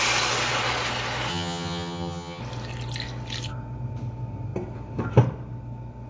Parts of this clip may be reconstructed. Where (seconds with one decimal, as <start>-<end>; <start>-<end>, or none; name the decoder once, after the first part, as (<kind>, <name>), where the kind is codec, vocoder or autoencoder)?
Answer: 1.3-2.4 (vocoder, HiFi-GAN)